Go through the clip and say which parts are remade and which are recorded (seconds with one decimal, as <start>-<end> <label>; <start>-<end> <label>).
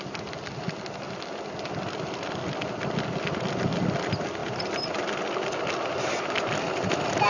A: 0.0-7.3 recorded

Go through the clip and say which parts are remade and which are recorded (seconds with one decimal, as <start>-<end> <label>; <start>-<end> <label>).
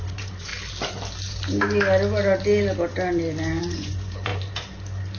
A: 0.0-0.5 remade; 0.5-3.6 recorded; 3.6-4.3 remade; 4.3-5.2 recorded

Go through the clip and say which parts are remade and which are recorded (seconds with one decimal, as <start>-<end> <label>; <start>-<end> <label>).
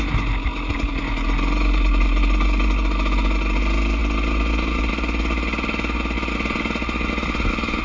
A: 0.0-7.8 recorded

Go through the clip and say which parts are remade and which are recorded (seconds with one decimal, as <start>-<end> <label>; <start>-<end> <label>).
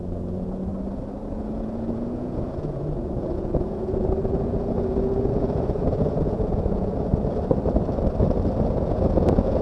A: 0.0-0.7 remade; 0.7-1.3 recorded; 1.3-7.1 remade; 7.1-8.6 recorded; 8.6-9.6 remade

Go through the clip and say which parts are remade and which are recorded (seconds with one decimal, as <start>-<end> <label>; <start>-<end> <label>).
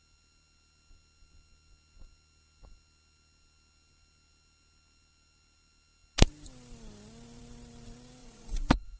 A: 0.0-8.2 recorded; 8.2-9.0 remade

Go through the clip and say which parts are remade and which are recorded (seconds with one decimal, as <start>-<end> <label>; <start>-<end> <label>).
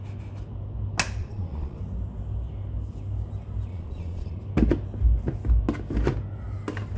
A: 0.0-1.2 recorded; 1.2-1.8 remade; 1.8-3.7 recorded; 3.7-4.4 remade; 4.4-7.0 recorded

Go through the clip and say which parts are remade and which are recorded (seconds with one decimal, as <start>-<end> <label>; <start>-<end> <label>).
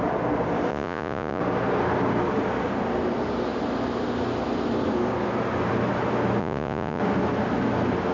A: 0.0-0.7 recorded; 0.7-1.4 remade; 1.4-6.4 recorded; 6.4-7.0 remade; 7.0-8.1 recorded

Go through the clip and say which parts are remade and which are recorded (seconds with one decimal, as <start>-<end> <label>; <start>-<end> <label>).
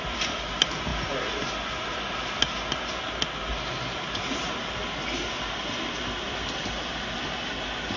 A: 0.0-8.0 recorded